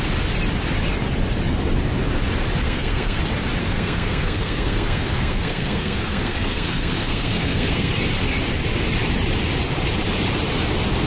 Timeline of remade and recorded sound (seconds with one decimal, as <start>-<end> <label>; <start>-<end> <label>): 0.0-2.6 recorded; 2.6-3.2 remade; 3.2-3.6 recorded; 3.6-7.9 remade; 7.9-11.1 recorded